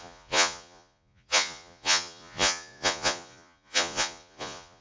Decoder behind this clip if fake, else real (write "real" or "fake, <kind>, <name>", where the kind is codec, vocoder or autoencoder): fake, vocoder, Vocos